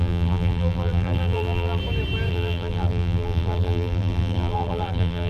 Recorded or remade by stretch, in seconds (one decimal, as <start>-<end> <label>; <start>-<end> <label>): 0.0-1.8 remade; 1.8-2.3 recorded; 2.3-5.3 remade